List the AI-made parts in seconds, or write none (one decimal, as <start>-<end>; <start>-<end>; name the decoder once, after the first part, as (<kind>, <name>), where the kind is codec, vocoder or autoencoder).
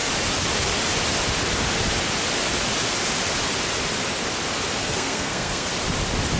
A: 4.8-5.7 (codec, SNAC)